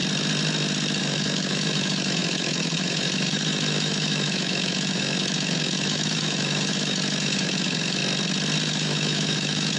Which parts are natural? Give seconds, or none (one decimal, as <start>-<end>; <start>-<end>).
0.0-1.0; 8.0-8.7